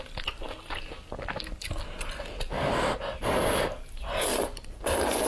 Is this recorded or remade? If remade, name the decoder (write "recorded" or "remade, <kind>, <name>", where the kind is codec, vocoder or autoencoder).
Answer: recorded